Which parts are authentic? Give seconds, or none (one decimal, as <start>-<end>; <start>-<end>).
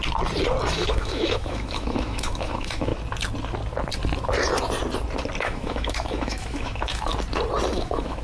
0.0-0.7; 2.9-5.4; 7.1-7.7